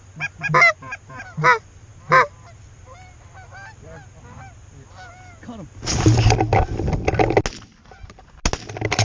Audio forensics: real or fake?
real